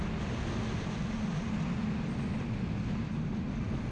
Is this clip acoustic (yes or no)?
yes